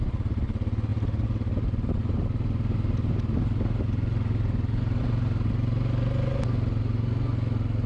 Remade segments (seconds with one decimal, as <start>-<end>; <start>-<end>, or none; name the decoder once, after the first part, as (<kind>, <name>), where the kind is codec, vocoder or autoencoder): none